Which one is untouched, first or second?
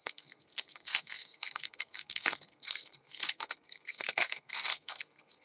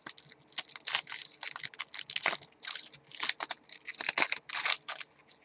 second